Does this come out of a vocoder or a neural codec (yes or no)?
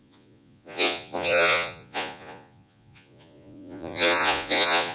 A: yes